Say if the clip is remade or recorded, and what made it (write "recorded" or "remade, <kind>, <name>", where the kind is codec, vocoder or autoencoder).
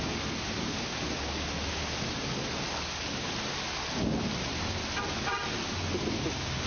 recorded